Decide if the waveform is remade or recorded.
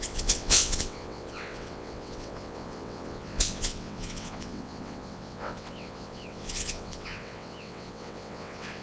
remade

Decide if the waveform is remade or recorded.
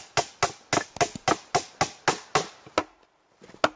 recorded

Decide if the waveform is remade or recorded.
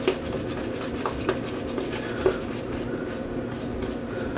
recorded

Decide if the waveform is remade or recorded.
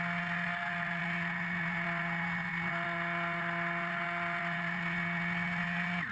recorded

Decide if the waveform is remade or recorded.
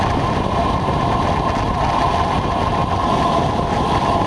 recorded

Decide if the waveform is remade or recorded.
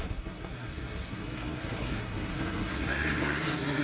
remade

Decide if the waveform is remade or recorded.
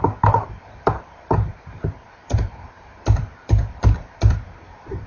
remade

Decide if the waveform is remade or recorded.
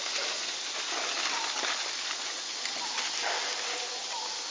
recorded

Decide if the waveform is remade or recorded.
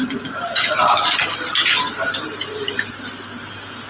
recorded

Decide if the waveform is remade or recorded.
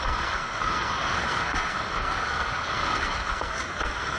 remade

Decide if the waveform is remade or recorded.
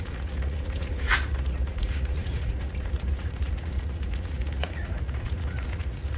remade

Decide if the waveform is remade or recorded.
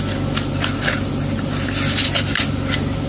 recorded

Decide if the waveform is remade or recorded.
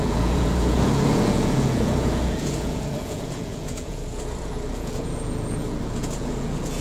remade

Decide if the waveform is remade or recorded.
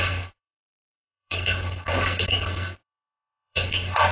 remade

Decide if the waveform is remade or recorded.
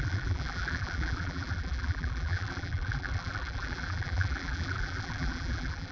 remade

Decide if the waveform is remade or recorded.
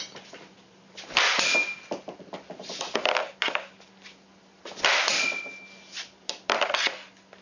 recorded